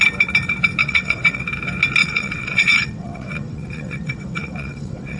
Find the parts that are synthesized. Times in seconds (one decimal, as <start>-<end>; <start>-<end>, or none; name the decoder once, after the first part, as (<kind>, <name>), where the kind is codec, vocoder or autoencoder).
0.8-1.4 (vocoder, WaveNeXt); 2.0-5.2